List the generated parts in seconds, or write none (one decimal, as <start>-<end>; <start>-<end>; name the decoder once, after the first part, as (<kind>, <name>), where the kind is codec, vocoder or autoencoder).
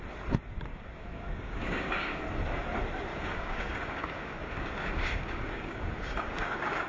0.7-2.2 (codec, DAC); 3.1-6.9